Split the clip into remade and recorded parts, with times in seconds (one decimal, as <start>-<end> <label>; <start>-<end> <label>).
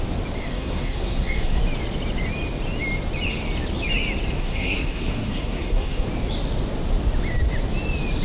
0.0-0.4 recorded; 0.4-1.6 remade; 1.6-4.4 recorded; 4.4-6.1 remade; 6.1-8.2 recorded